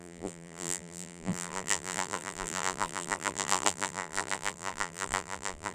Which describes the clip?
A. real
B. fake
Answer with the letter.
B